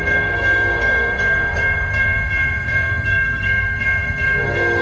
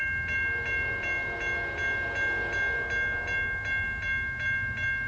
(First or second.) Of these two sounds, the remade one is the first